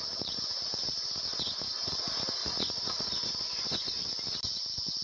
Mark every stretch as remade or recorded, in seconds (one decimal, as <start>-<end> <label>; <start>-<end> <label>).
0.0-1.3 recorded; 1.3-1.9 remade; 1.9-2.4 recorded; 2.4-4.1 remade; 4.1-5.0 recorded